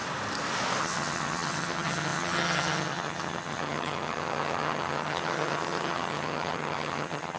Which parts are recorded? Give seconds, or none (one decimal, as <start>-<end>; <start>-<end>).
0.0-0.8